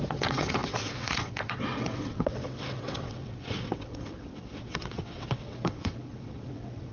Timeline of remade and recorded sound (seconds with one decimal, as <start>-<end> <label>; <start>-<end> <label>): 0.0-6.9 remade